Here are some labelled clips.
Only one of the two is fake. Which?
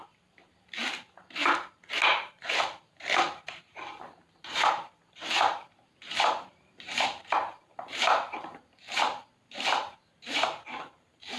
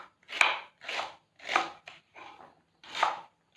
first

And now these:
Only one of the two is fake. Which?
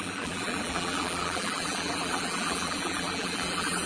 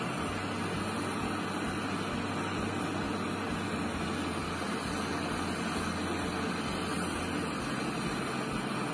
first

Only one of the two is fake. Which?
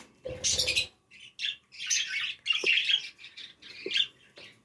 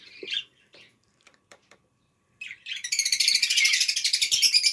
second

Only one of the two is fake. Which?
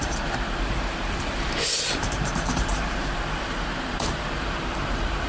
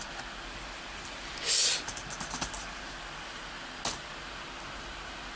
first